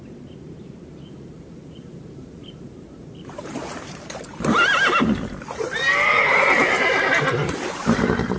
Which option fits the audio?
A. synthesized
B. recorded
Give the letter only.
A